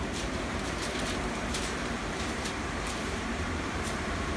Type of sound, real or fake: fake